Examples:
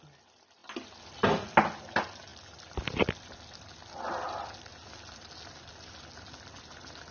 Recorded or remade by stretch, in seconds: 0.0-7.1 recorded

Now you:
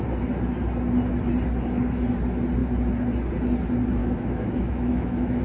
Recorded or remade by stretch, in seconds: 0.0-4.0 recorded; 4.0-5.4 remade

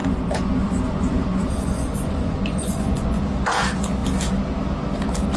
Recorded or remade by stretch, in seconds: 0.0-3.2 remade; 3.2-5.4 recorded

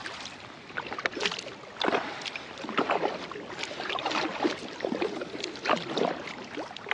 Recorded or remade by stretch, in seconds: 0.0-6.9 recorded